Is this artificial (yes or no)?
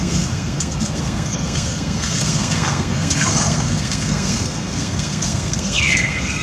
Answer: yes